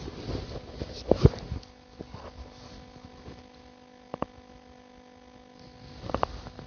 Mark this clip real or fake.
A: real